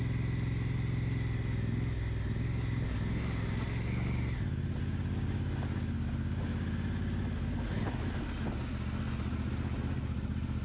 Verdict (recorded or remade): recorded